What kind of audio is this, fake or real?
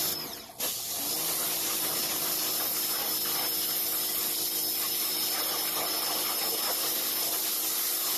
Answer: real